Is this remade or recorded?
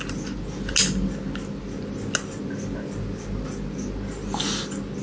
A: recorded